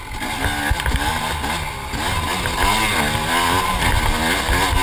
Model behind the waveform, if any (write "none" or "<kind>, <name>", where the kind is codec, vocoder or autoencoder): none